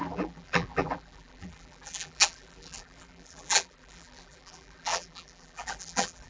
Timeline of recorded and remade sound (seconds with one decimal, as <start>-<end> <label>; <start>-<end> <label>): 0.0-6.3 remade